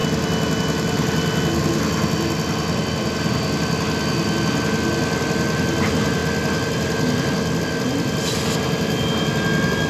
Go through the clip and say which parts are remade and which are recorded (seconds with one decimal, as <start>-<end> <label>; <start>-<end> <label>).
0.0-9.9 recorded